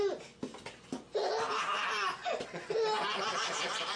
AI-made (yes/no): no